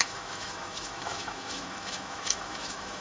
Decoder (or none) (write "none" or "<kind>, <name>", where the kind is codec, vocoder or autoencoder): autoencoder, DAC-VAE